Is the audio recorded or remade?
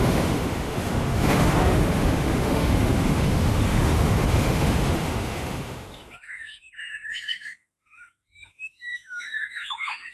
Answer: remade